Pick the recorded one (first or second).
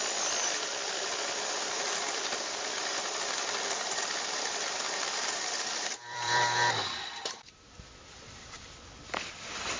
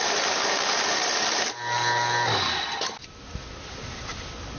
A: second